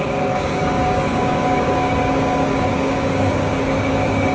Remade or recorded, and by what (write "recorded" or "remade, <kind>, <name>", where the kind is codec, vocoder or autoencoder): remade, codec, DAC